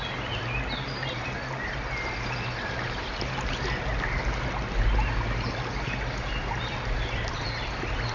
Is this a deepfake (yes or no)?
no